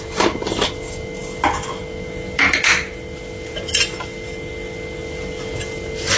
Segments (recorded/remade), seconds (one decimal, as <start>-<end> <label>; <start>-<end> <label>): 0.0-6.2 recorded